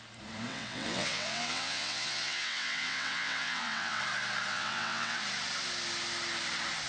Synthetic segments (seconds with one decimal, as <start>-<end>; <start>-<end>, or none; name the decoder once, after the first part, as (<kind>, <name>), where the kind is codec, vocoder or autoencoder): 0.5-4.0 (vocoder, WaveNeXt); 4.5-5.2